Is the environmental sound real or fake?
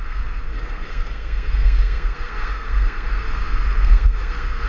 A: fake